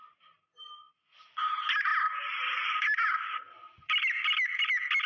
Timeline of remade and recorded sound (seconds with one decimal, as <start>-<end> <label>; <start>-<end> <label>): 0.0-5.1 recorded